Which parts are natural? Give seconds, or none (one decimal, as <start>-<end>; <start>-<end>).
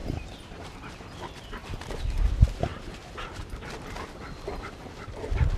0.9-1.6; 2.3-2.7; 3.7-5.6